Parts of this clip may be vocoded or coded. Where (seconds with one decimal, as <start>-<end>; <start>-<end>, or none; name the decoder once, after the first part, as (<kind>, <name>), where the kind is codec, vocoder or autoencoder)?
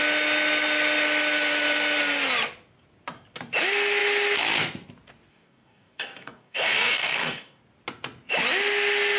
5.3-7.6 (codec, DAC)